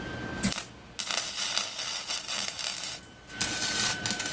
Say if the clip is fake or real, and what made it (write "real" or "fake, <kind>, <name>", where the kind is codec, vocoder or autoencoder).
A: real